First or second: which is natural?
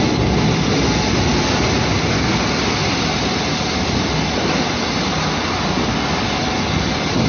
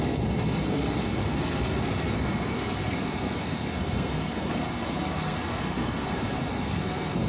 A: first